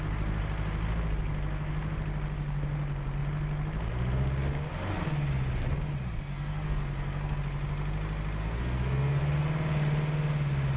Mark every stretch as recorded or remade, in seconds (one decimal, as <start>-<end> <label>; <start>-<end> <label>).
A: 0.0-6.3 recorded; 6.3-7.4 remade; 7.4-8.4 recorded; 8.4-9.2 remade; 9.2-10.8 recorded